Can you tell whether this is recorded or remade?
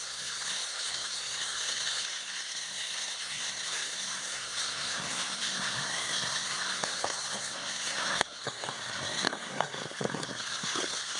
remade